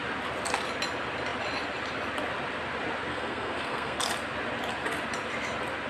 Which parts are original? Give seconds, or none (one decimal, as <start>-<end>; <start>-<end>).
0.0-3.1; 4.0-5.9